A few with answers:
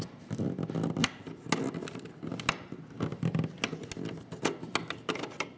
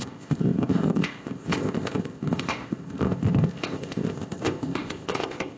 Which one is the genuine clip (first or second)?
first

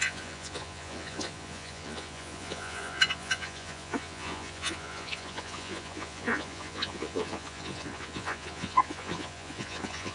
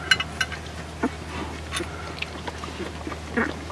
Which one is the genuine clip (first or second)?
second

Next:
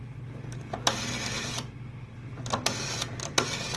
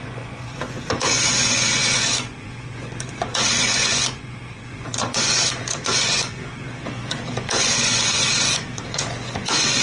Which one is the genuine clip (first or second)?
first